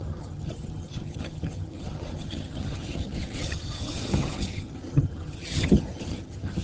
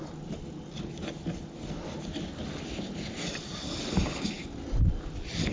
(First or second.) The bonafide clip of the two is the second